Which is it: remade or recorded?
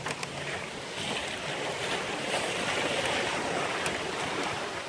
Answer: recorded